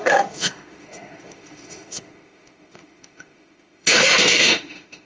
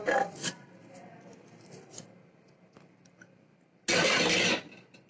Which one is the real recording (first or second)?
second